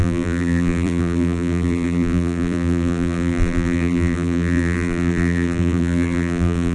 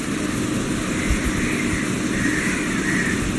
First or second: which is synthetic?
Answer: first